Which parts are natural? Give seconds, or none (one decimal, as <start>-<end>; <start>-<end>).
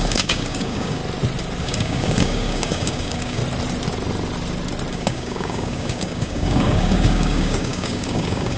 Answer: 1.0-1.6; 3.4-4.9